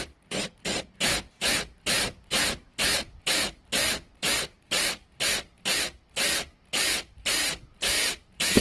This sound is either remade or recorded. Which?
recorded